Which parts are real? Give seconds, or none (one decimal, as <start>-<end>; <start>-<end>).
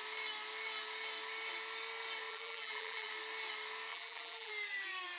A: 0.0-2.3; 3.1-3.9; 4.5-5.2